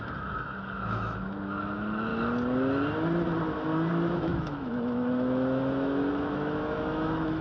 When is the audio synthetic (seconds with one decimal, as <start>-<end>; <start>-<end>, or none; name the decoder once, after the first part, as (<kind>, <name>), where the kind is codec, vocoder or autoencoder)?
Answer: 0.0-2.1 (autoencoder, DAC-VAE); 3.9-7.4